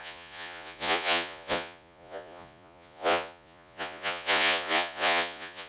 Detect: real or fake fake